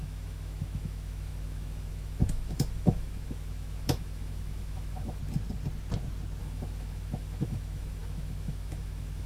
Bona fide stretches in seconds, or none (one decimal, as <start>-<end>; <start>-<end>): 5.2-6.4